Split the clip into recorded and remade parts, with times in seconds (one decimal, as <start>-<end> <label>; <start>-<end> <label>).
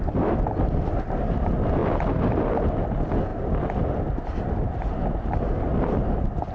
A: 0.0-6.5 recorded